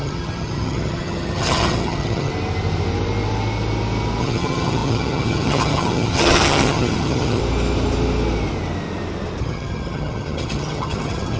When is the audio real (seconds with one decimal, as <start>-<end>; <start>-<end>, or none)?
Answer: 2.3-4.2; 7.4-9.4